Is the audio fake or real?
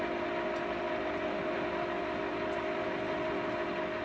real